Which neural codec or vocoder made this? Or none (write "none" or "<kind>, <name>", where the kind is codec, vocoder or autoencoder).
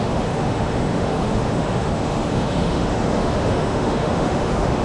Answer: autoencoder, DAC-VAE